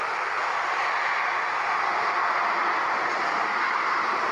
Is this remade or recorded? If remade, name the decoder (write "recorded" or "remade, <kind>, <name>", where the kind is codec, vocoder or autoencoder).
recorded